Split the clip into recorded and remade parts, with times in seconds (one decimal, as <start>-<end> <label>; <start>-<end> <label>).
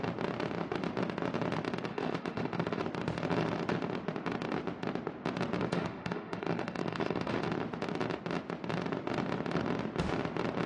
0.0-1.9 recorded; 1.9-2.8 remade; 2.8-5.7 recorded; 5.7-7.4 remade; 7.4-10.7 recorded